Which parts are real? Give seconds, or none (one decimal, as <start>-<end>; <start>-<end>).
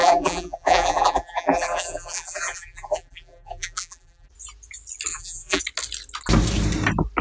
4.3-5.1; 5.6-7.2